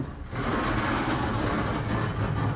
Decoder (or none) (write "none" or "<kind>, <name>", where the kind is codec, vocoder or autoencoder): none